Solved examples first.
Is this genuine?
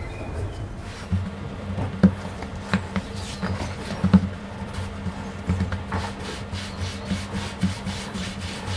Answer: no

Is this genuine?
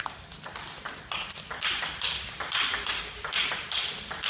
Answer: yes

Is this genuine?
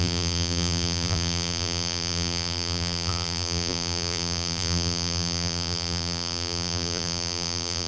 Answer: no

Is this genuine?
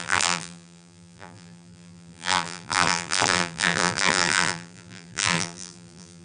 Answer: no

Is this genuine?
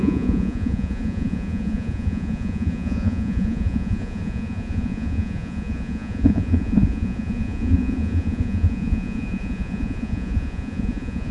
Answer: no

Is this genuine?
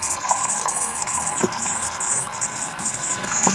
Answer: no